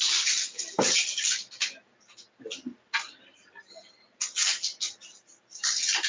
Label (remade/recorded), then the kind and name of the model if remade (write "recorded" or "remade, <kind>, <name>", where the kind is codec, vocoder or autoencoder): recorded